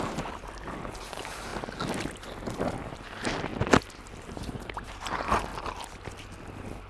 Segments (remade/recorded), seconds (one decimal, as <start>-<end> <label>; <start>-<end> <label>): 0.0-1.5 remade; 1.5-2.9 recorded; 2.9-3.5 remade; 3.5-4.2 recorded; 4.2-5.5 remade; 5.5-6.9 recorded